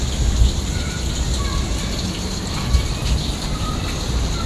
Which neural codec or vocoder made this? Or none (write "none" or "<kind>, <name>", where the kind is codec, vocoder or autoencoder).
none